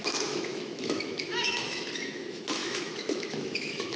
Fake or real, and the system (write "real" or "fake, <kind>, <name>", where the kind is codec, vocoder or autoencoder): fake, autoencoder, DAC-VAE